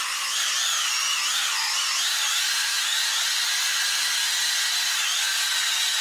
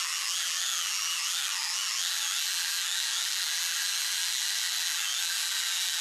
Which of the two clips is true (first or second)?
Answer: first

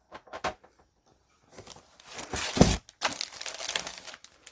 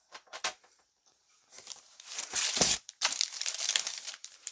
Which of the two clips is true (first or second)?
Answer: first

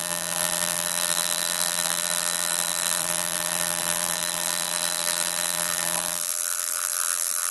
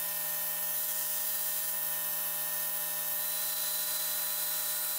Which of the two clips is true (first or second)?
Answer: second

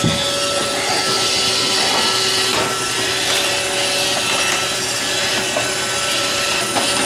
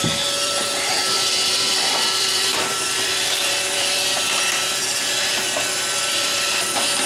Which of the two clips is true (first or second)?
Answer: first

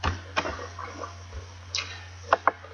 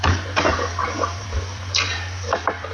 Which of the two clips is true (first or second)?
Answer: first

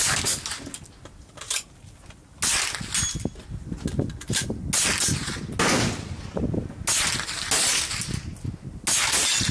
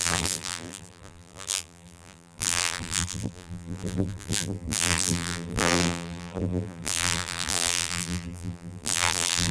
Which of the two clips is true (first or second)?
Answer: first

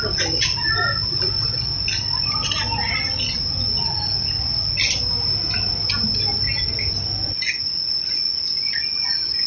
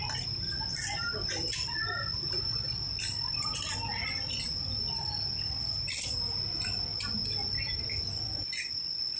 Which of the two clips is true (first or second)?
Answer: first